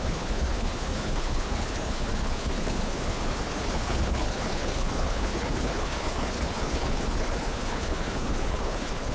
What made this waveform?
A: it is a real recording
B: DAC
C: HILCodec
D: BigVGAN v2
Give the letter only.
C